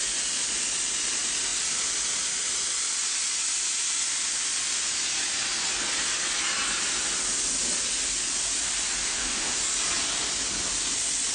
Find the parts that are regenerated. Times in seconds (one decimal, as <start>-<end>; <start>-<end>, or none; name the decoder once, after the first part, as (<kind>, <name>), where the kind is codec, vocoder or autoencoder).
9.0-9.6 (autoencoder, DAC-VAE)